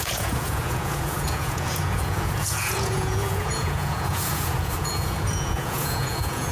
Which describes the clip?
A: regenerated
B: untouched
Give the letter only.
A